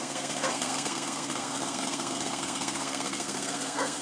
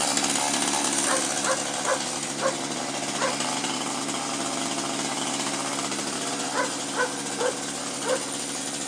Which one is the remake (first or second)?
first